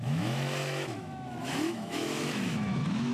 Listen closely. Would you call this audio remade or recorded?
remade